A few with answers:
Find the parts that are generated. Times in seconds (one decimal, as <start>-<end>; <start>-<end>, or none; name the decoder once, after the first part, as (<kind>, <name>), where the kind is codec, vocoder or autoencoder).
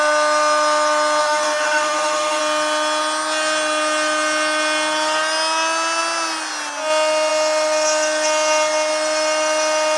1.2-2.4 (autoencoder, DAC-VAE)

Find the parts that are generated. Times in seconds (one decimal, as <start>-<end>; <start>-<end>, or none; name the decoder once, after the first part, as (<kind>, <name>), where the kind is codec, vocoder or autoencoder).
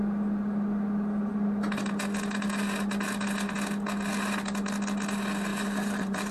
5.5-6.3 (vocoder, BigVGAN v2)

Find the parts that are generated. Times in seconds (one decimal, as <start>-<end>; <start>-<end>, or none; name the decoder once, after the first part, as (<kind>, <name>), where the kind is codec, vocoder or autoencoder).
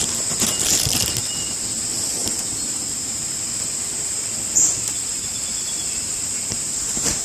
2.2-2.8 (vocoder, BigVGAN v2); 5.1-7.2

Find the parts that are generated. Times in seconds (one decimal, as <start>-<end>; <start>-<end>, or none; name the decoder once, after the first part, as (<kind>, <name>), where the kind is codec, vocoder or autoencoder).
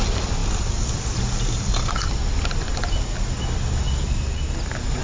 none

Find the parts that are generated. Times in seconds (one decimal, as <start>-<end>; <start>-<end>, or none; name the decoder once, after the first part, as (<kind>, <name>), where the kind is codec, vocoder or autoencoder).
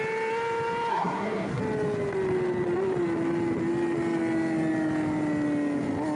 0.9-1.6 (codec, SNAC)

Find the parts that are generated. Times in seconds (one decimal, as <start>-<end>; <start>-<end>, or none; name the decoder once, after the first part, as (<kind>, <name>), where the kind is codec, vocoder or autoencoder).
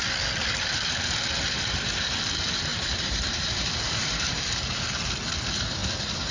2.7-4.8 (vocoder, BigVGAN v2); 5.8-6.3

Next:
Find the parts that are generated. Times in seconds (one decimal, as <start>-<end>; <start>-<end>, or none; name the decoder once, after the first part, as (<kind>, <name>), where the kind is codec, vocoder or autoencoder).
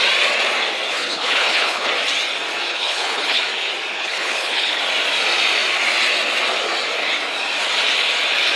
0.9-1.9 (codec, HILCodec); 2.7-3.4; 3.9-4.8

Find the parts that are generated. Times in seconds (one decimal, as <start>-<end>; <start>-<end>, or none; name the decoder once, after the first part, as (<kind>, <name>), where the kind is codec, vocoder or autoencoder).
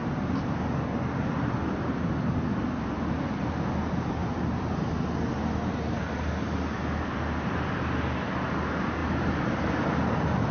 none